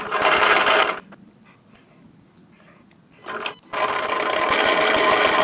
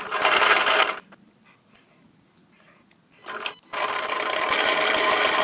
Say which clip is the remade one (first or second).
second